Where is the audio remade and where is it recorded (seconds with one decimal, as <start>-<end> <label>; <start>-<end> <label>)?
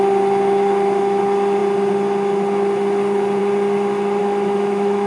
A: 0.0-4.2 recorded; 4.2-5.1 remade